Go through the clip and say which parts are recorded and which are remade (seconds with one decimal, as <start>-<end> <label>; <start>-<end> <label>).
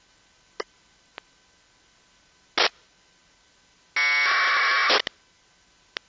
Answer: 0.0-6.1 recorded